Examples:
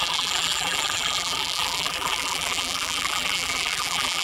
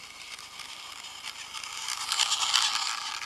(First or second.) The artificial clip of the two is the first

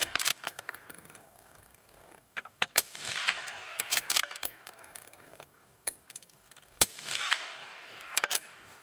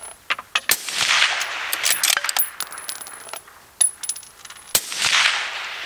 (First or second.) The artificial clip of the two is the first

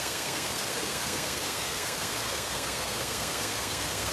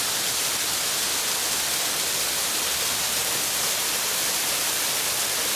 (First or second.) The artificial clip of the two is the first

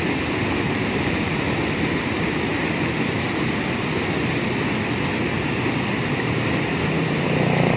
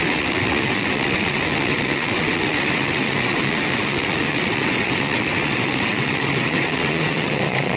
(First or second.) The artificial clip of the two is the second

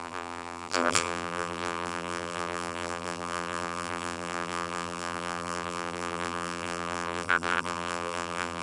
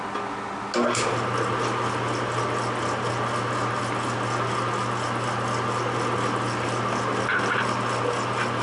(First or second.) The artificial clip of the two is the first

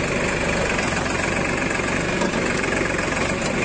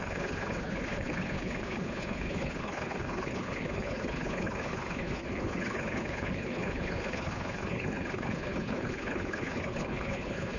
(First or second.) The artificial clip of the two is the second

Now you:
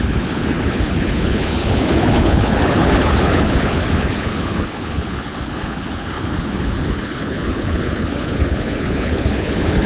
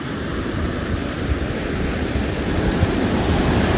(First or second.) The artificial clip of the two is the first